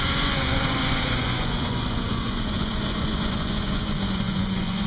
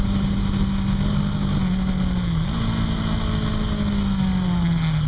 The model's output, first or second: first